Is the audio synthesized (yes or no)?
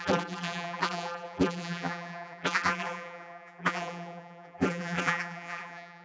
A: yes